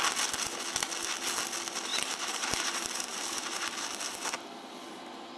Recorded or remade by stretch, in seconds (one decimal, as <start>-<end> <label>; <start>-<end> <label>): 0.0-1.9 recorded; 1.9-3.7 remade; 3.7-5.4 recorded